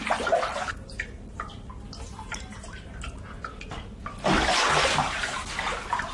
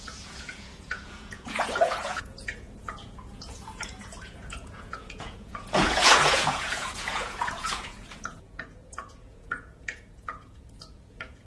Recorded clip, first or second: first